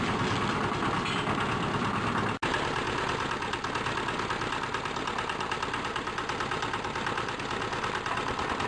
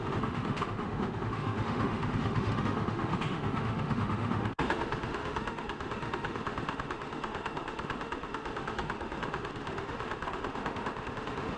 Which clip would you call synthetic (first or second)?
second